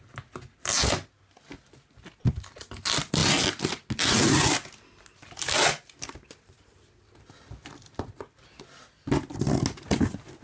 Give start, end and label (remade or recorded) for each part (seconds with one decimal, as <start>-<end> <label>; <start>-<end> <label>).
0.0-10.4 recorded